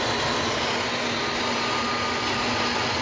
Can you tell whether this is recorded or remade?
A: recorded